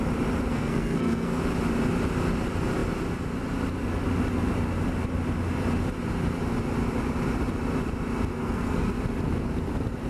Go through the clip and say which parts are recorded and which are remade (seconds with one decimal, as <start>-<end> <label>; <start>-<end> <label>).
0.0-0.5 recorded; 0.5-1.4 remade; 1.4-8.3 recorded; 8.3-9.0 remade; 9.0-10.1 recorded